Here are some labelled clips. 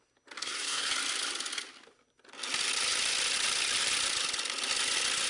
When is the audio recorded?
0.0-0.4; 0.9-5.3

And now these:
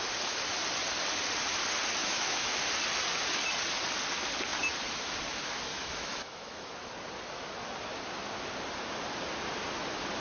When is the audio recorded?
0.0-2.0; 2.6-5.7; 6.7-10.2

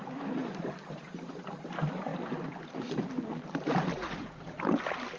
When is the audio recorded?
0.0-3.9; 4.5-5.2

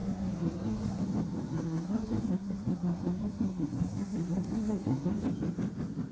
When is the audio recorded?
1.0-1.5; 5.2-6.1

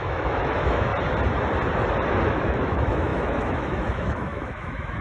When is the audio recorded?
0.9-2.3